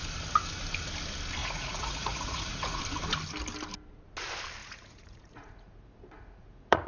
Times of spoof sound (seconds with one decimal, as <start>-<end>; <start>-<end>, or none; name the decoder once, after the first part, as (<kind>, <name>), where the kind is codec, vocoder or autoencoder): 1.4-2.8 (vocoder, Vocos); 4.6-6.9